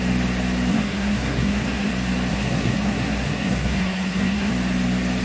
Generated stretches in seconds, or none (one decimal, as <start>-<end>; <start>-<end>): 0.7-1.9; 2.3-4.5